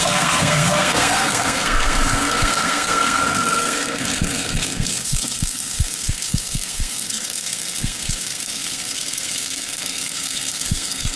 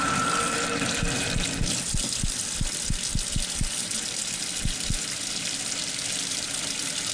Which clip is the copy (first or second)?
first